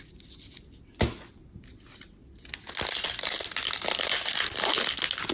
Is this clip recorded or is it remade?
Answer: recorded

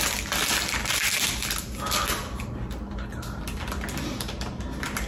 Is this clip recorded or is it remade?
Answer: recorded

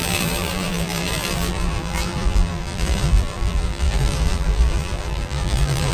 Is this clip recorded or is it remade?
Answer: remade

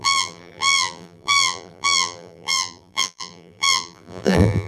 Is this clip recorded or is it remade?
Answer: remade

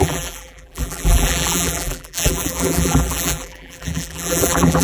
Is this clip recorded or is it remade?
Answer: remade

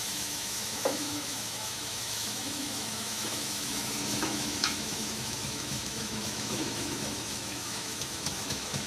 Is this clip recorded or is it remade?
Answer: remade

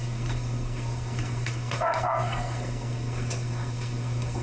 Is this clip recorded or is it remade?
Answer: remade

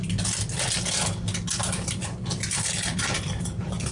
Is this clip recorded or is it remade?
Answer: recorded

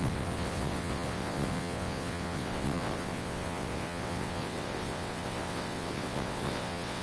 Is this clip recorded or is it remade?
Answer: remade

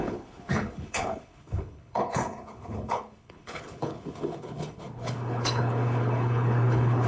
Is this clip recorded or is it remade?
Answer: remade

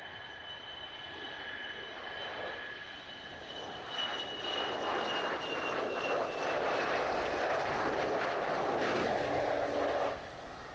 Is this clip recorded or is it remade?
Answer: recorded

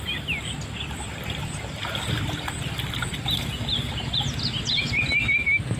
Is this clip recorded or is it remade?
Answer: recorded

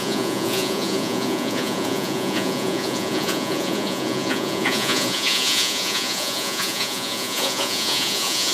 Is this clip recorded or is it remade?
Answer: remade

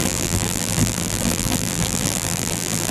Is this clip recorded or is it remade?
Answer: remade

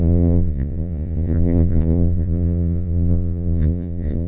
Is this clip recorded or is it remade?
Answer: remade